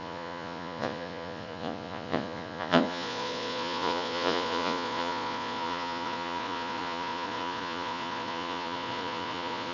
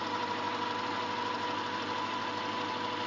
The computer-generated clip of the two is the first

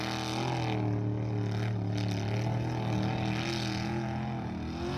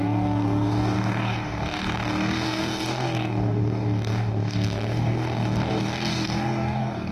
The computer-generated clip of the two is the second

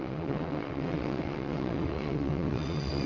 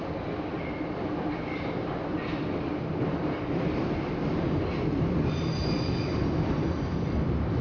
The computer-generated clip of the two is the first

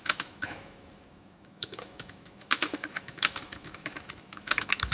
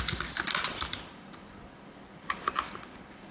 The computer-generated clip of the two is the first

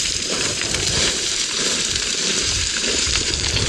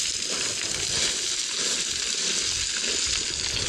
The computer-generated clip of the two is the first